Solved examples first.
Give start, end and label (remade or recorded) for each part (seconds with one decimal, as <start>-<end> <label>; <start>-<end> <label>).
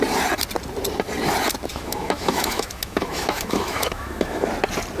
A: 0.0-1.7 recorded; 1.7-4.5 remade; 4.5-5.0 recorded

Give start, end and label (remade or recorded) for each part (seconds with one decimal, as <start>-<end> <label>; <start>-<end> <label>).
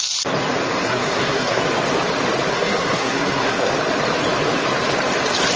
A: 0.0-0.8 recorded; 0.8-1.6 remade; 1.6-2.5 recorded; 2.5-3.7 remade; 3.7-5.6 recorded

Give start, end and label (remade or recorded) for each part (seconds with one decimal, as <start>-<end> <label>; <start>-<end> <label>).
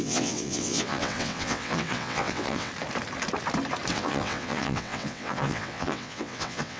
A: 0.0-2.7 remade; 2.7-3.9 recorded; 3.9-6.8 remade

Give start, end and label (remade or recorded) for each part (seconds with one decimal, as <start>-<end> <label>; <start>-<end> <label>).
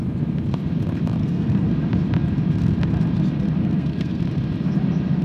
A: 0.0-1.2 recorded; 1.2-1.7 remade; 1.7-3.6 recorded; 3.6-4.2 remade; 4.2-5.2 recorded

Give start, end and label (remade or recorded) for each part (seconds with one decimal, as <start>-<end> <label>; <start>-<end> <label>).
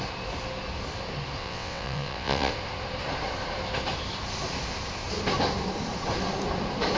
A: 0.0-1.4 recorded; 1.4-2.5 remade; 2.5-7.0 recorded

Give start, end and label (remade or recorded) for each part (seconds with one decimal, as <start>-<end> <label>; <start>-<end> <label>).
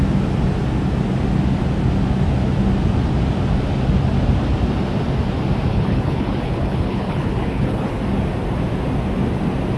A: 0.0-5.7 recorded; 5.7-8.0 remade; 8.0-9.8 recorded